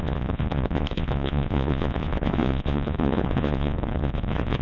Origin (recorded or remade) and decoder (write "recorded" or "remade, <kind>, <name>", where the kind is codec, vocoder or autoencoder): remade, vocoder, Vocos